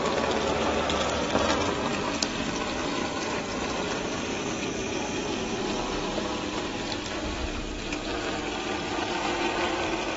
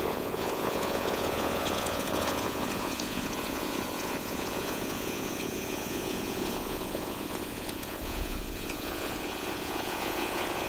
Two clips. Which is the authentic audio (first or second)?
first